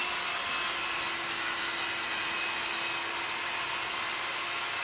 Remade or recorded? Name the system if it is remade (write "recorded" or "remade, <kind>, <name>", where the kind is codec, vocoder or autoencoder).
recorded